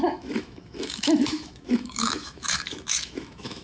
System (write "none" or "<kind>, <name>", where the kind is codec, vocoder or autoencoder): autoencoder, DAC-VAE